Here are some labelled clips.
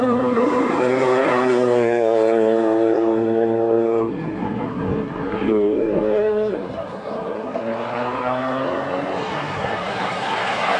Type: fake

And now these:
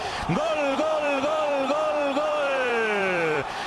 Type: fake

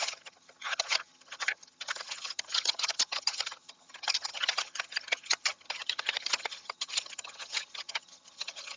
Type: fake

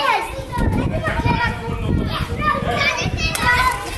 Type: real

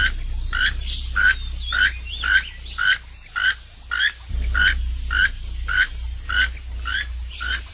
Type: real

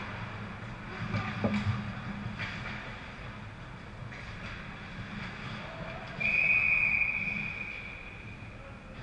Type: real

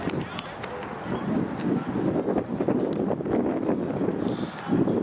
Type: real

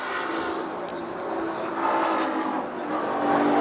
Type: real